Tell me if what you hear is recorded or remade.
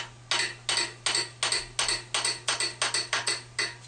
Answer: recorded